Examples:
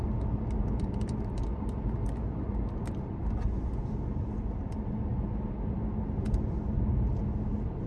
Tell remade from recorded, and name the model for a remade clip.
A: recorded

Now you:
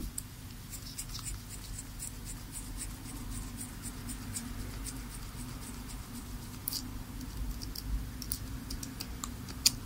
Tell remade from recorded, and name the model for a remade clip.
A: recorded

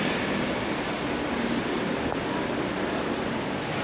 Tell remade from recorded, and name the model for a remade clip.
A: recorded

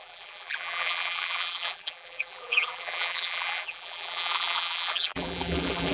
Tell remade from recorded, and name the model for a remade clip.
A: remade, vocoder, BigVGAN v2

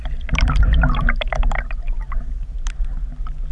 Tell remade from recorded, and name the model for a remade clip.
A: recorded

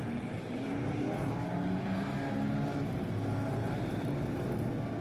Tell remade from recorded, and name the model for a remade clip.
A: recorded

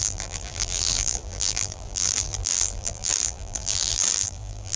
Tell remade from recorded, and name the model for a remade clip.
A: remade, vocoder, BigVGAN v2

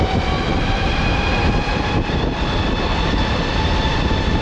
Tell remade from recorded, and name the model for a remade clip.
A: recorded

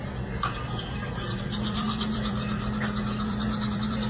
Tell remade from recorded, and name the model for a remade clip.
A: remade, vocoder, BigVGAN v2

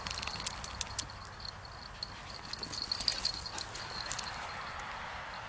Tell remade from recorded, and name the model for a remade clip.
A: recorded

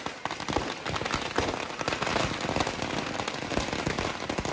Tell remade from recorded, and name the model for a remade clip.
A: recorded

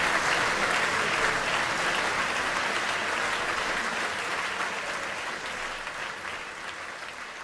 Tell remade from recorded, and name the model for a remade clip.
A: recorded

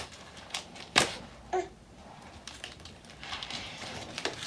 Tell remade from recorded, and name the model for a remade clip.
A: remade, vocoder, BigVGAN v2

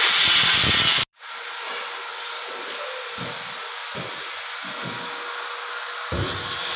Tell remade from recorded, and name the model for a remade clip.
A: recorded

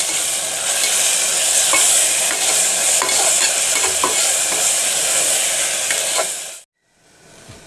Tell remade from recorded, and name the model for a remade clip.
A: recorded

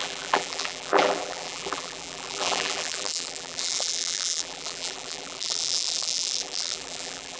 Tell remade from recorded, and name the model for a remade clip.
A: remade, vocoder, BigVGAN v2